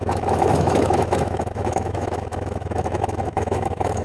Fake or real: fake